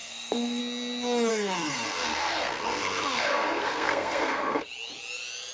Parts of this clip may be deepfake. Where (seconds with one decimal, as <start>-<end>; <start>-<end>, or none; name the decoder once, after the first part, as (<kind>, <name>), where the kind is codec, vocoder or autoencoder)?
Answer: 0.0-0.6 (codec, SNAC); 1.3-4.6